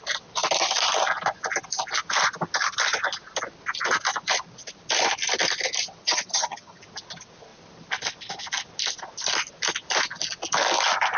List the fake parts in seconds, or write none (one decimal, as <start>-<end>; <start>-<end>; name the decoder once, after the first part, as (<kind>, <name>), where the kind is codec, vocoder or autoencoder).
6.0-6.8 (vocoder, HiFi-GAN)

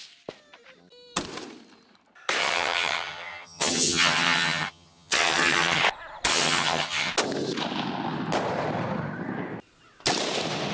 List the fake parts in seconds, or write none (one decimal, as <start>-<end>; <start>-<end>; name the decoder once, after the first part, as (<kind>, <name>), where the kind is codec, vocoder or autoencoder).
2.4-5.8 (vocoder, HiFi-GAN); 6.3-7.1

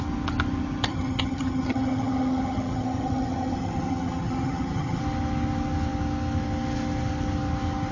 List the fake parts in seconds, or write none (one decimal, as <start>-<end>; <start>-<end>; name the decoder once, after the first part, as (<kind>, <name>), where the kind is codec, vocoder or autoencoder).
0.9-5.0 (vocoder, HiFi-GAN)

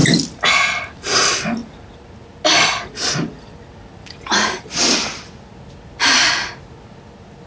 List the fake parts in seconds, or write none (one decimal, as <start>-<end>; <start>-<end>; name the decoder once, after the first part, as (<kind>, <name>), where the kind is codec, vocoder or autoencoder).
none